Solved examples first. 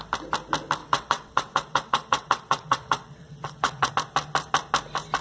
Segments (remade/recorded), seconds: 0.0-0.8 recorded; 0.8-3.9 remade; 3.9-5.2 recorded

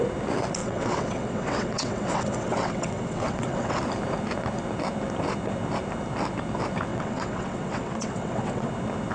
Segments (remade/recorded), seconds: 0.0-0.6 recorded; 0.6-3.8 remade; 3.8-6.9 recorded; 6.9-8.7 remade; 8.7-9.1 recorded

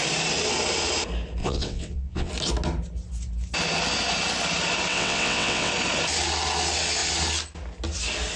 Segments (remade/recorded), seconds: 0.0-1.4 recorded; 1.4-2.3 remade; 2.3-4.9 recorded; 4.9-5.7 remade; 5.7-8.4 recorded

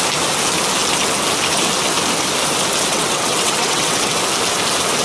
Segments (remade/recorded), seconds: 0.0-2.9 recorded; 2.9-4.2 remade; 4.2-5.0 recorded

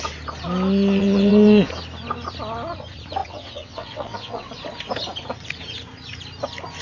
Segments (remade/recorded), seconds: 0.0-1.0 recorded; 1.0-1.7 remade; 1.7-3.2 recorded; 3.2-4.5 remade; 4.5-6.8 recorded

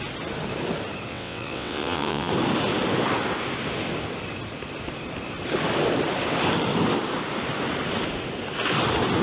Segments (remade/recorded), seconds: 0.0-1.1 recorded; 1.1-2.3 remade; 2.3-9.2 recorded

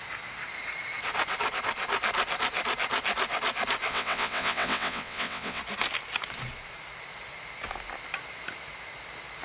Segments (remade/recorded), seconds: 0.0-3.9 recorded; 3.9-5.6 remade; 5.6-9.4 recorded